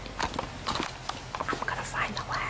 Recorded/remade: recorded